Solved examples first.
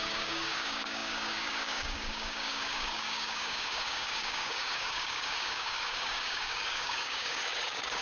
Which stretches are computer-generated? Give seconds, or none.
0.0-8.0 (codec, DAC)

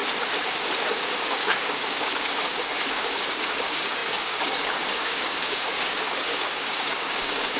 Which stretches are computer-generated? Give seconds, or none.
0.9-7.6 (codec, DAC)

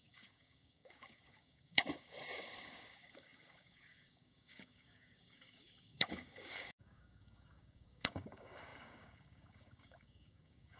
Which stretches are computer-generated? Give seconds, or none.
0.0-10.8 (codec, DAC)

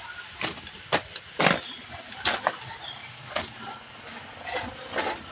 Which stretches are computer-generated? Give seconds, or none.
3.0-4.6 (codec, DAC)